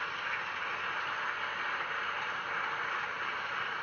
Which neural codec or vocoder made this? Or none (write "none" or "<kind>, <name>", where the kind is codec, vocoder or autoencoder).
none